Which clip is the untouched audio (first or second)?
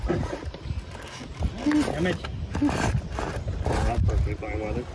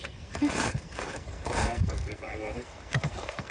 first